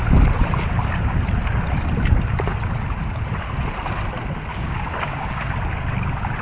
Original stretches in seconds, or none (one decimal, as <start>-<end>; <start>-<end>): 0.0-4.5; 5.5-6.4